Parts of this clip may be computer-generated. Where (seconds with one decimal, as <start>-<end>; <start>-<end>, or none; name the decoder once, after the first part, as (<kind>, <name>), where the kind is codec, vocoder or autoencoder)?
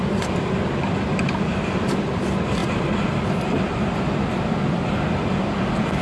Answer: 0.0-2.6 (vocoder, BigVGAN v2); 4.4-6.0